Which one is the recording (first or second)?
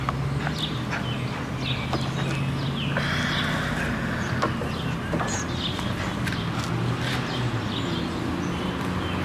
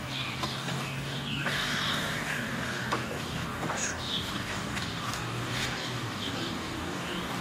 first